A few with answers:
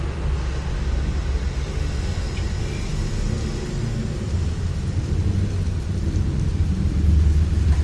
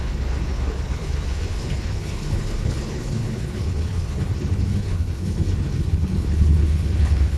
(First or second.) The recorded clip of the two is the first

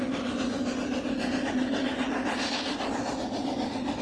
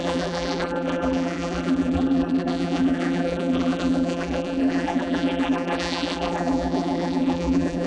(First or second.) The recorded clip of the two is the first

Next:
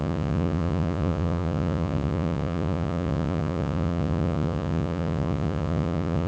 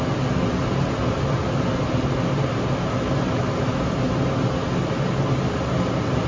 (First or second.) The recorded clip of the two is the second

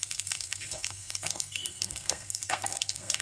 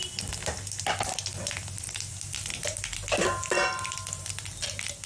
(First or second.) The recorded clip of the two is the second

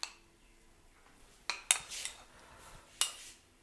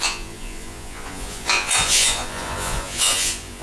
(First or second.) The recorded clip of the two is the first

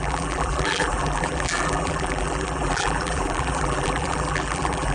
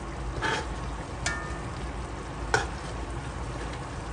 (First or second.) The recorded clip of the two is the second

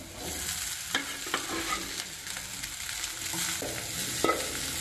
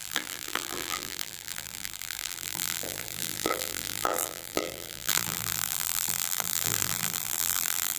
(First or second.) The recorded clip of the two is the first